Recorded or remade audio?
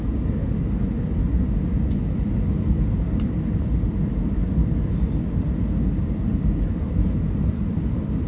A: recorded